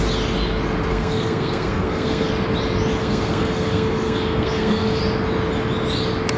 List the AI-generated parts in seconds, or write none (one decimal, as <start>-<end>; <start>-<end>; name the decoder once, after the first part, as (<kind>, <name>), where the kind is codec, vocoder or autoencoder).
0.9-2.3 (codec, SNAC); 3.0-5.0